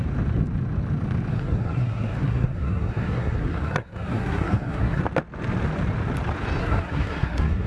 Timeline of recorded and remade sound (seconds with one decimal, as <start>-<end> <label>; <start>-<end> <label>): 0.0-1.3 recorded; 1.3-5.0 remade; 5.0-6.6 recorded; 6.6-7.7 remade